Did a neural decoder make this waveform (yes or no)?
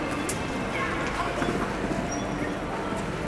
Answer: no